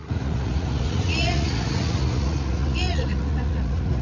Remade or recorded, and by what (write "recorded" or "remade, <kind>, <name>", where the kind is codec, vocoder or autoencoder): remade, vocoder, Vocos